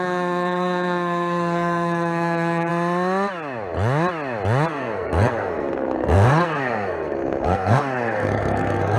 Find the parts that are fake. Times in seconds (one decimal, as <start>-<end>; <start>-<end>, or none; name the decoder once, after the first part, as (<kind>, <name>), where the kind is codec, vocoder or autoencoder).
0.0-2.7 (codec, SNAC); 4.7-9.0